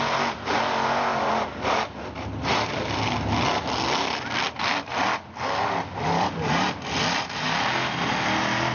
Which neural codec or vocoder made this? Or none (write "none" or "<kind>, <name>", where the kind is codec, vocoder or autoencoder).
none